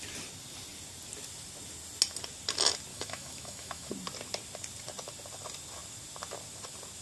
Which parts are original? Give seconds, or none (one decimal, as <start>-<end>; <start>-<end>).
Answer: 0.0-2.9; 3.9-7.0